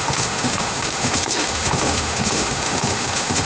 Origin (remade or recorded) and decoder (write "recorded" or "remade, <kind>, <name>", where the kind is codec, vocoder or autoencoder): remade, autoencoder, DAC-VAE